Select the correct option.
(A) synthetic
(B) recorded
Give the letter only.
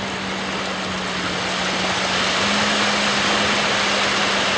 B